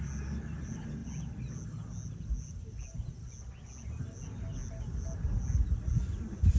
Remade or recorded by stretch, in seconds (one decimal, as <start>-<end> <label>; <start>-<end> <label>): 0.0-6.6 recorded